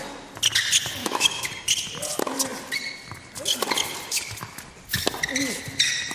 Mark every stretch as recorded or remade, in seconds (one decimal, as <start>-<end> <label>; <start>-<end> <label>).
0.0-1.0 recorded; 1.0-1.5 remade; 1.5-6.1 recorded